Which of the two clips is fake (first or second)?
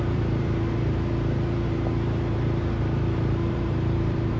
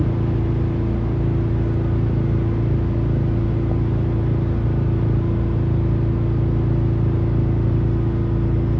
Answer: first